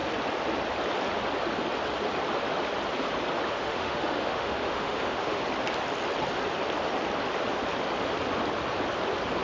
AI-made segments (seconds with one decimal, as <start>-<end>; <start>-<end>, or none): 3.5-5.4